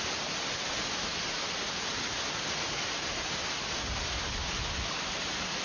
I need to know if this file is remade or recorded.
recorded